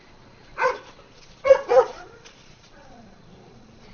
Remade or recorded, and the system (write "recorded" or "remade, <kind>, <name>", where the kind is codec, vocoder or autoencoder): remade, vocoder, Vocos